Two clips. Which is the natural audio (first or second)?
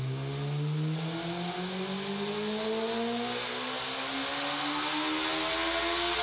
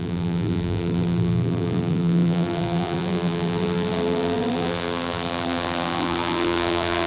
first